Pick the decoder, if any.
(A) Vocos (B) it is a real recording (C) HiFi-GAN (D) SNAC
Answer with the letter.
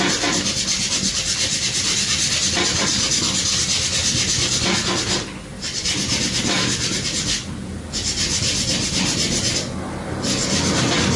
B